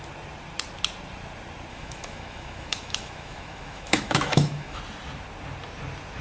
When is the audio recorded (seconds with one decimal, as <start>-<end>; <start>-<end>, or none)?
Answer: 0.0-1.7; 4.8-6.2